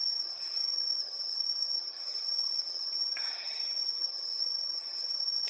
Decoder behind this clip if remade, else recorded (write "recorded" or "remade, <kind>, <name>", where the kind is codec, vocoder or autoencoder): remade, vocoder, HiFi-GAN